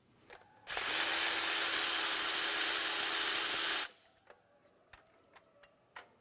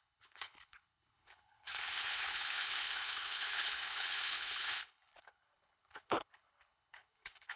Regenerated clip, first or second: second